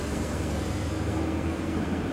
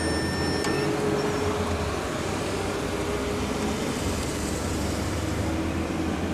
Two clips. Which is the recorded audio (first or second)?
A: second